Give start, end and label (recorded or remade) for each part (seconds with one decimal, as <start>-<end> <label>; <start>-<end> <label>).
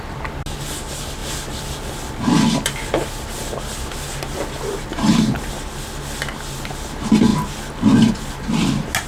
0.0-4.9 recorded; 4.9-5.5 remade; 5.5-9.1 recorded